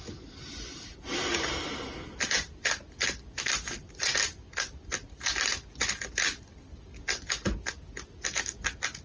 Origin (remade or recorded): recorded